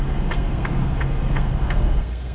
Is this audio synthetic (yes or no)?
yes